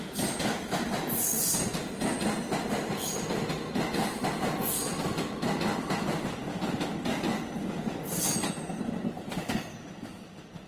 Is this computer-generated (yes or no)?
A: no